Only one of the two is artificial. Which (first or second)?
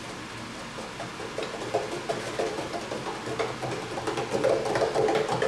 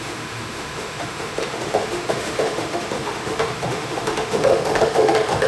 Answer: second